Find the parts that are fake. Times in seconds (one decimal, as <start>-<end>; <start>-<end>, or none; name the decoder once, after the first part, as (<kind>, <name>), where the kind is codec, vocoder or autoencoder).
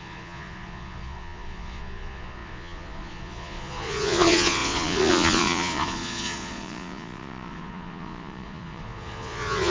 0.0-9.7 (vocoder, Vocos)